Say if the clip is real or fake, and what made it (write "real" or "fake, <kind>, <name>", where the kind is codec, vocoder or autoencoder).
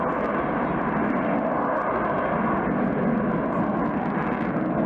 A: real